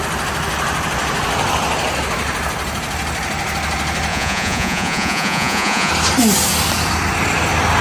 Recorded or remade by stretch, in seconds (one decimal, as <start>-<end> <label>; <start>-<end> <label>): 0.0-4.1 recorded; 4.1-5.9 remade; 5.9-7.8 recorded